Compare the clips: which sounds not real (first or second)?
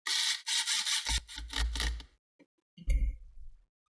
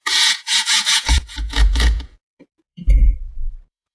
second